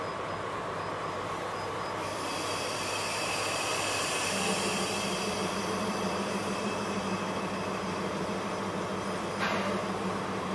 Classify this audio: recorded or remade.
remade